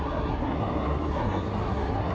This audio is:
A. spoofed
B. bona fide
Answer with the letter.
A